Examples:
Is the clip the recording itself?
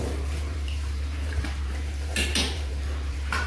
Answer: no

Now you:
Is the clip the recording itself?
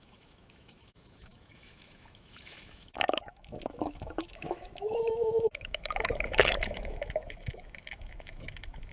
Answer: no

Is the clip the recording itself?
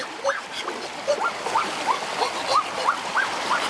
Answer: yes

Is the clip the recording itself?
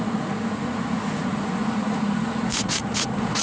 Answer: no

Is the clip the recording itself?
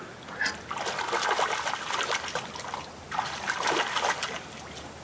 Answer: yes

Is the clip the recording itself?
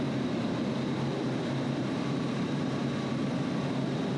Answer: no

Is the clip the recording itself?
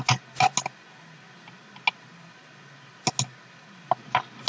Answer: yes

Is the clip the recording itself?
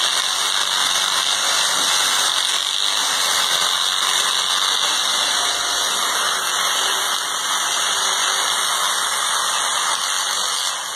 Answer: yes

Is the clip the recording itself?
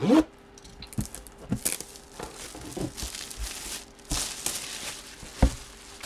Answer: yes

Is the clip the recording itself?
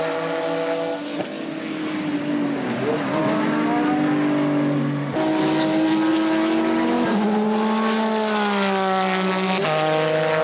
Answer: yes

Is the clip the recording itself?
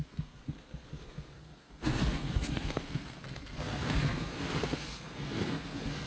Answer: no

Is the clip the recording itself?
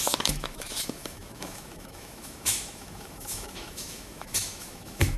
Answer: no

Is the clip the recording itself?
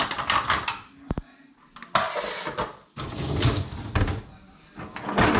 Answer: yes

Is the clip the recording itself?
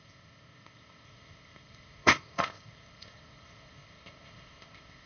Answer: no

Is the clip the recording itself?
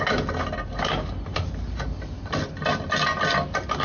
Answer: yes